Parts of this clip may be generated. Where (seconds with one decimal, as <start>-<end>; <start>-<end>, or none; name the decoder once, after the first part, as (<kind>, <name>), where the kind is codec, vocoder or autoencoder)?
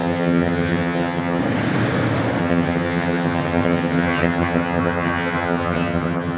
0.0-1.4 (vocoder, HiFi-GAN); 2.4-6.4